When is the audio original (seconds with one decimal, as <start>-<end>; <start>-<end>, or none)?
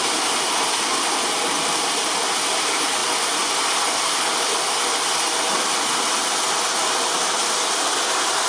0.0-8.5